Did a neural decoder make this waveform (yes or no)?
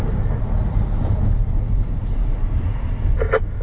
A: no